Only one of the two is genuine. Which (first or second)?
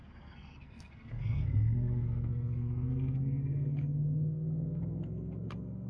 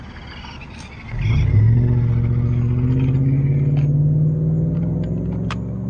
second